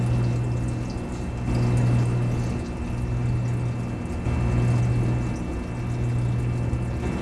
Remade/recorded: recorded